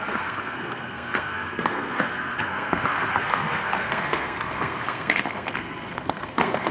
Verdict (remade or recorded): remade